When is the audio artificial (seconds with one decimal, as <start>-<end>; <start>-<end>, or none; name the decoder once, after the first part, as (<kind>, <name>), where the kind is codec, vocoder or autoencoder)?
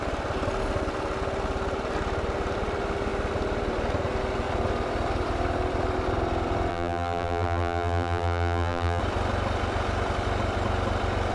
6.7-9.0 (vocoder, BigVGAN v2)